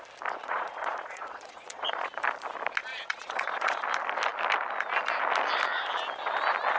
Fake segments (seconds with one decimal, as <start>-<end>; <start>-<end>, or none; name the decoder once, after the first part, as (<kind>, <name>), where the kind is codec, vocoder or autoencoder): 0.4-2.2 (vocoder, Vocos); 2.9-3.8